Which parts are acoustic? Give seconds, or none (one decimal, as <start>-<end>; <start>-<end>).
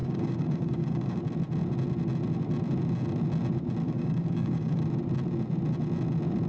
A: 1.2-3.8; 4.8-6.5